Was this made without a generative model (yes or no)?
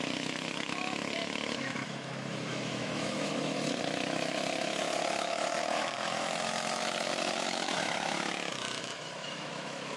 no